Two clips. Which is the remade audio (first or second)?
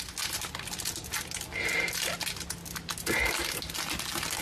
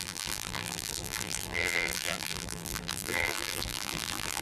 second